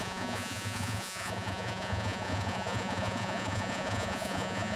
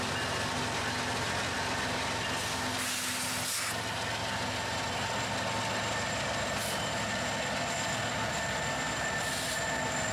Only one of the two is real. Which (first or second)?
second